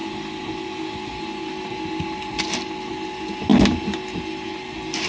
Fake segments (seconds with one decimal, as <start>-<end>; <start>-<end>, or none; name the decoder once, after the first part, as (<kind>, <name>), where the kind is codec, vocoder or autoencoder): none